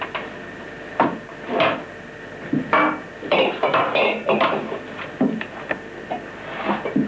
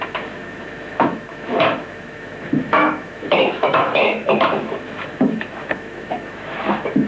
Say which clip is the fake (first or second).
second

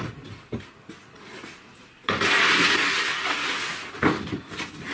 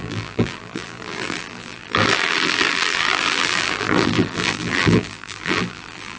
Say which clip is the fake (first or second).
second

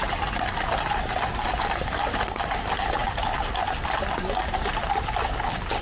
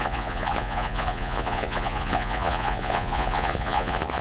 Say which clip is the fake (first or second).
second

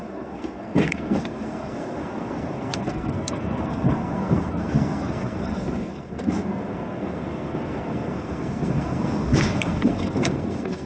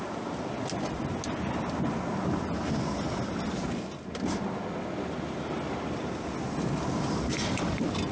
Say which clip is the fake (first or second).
first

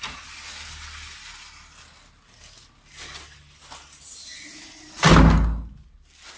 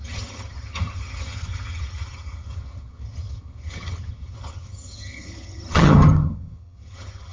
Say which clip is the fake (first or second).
second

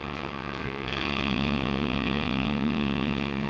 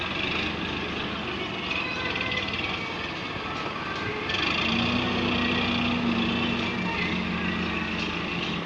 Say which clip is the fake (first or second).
first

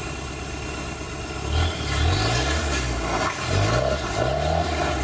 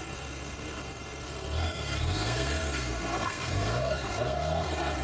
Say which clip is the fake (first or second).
second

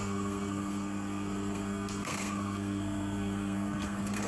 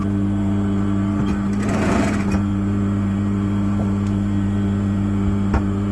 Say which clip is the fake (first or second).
first